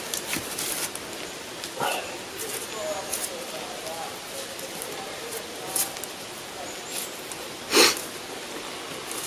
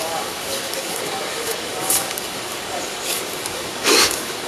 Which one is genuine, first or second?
first